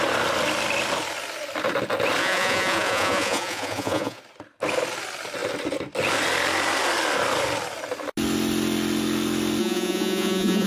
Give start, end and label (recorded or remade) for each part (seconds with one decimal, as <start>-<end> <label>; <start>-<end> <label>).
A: 0.0-2.2 recorded; 2.2-4.2 remade; 4.2-9.6 recorded; 9.6-10.7 remade